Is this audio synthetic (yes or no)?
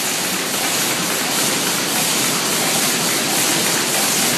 no